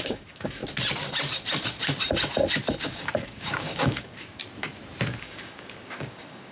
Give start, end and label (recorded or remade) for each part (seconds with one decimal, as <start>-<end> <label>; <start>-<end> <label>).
0.0-0.6 remade; 0.6-2.8 recorded; 2.8-4.4 remade; 4.4-5.2 recorded; 5.2-6.5 remade